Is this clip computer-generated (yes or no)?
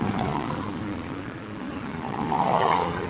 yes